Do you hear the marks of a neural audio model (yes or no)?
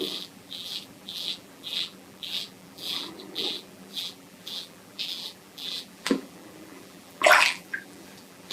yes